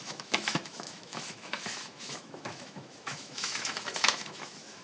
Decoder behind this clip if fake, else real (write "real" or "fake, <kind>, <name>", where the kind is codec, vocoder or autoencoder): fake, autoencoder, DAC-VAE